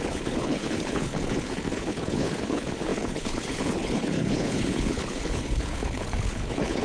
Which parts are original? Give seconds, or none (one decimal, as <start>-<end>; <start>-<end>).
none